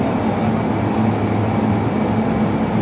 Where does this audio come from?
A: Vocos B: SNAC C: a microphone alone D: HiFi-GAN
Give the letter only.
C